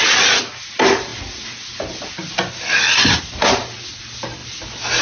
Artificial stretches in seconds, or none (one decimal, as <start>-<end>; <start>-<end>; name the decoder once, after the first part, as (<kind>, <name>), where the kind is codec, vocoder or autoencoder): none